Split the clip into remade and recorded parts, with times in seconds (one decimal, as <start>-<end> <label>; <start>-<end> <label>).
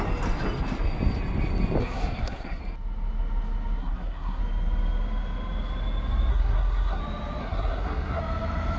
0.0-1.8 recorded; 1.8-2.6 remade; 2.6-3.8 recorded; 3.8-4.4 remade; 4.4-6.3 recorded; 6.3-7.0 remade; 7.0-7.4 recorded; 7.4-8.2 remade; 8.2-8.8 recorded